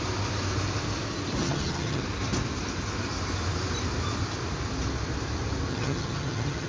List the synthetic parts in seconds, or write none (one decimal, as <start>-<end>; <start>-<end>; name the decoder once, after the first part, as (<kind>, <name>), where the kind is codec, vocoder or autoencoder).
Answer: 1.4-2.0 (vocoder, HiFi-GAN); 5.7-6.7